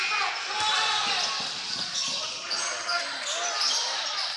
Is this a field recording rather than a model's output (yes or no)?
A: yes